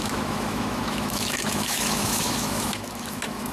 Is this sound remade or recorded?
remade